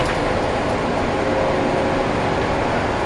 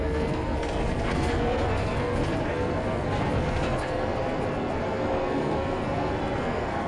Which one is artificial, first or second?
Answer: second